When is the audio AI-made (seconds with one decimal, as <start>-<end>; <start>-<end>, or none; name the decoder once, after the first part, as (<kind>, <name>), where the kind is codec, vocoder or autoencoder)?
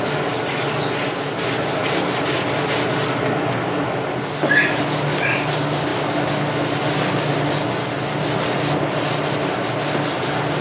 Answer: none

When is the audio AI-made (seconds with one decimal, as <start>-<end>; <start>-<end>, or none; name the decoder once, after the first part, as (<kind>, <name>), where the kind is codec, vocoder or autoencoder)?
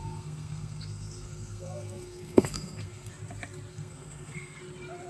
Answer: 0.0-3.1 (codec, SNAC); 3.7-4.6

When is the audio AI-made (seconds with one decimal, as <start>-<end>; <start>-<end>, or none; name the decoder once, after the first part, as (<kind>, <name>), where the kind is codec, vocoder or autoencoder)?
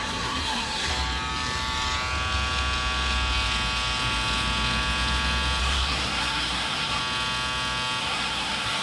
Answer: 0.0-0.9 (codec, SNAC); 5.6-7.0; 8.0-8.8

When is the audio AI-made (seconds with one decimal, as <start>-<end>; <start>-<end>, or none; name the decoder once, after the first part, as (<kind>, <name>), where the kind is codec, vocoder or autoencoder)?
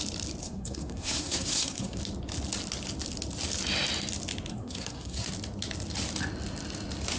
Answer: 0.4-2.0 (codec, SNAC); 4.5-5.3